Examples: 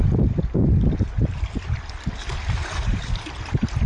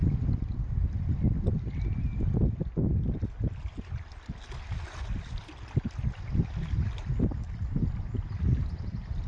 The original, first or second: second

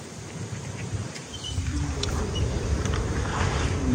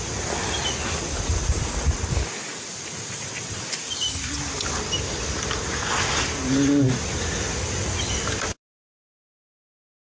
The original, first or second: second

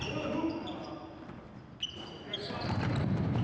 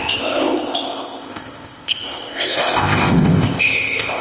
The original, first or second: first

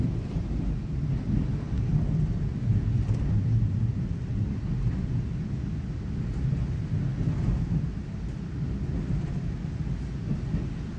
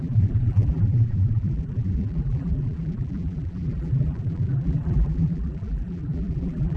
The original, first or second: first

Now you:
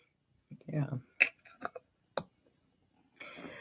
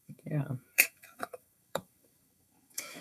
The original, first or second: first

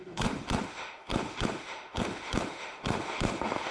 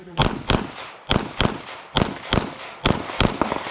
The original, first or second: second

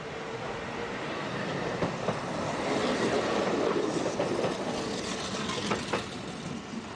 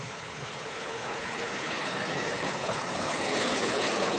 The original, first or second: first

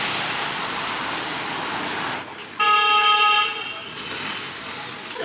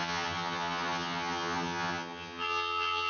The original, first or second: first